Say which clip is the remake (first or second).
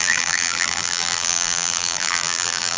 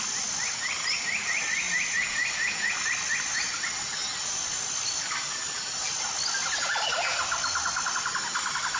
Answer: first